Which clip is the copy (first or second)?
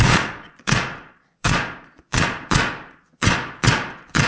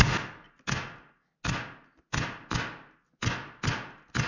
first